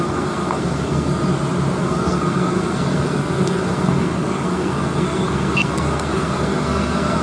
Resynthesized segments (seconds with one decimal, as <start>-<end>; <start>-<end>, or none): 0.0-1.2; 1.8-7.2